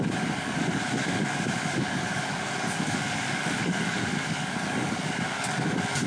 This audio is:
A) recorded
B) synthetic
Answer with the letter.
B